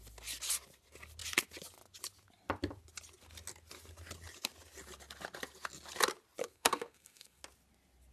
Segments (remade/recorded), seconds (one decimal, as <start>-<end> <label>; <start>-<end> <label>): 0.0-6.4 recorded; 6.4-7.4 remade; 7.4-8.1 recorded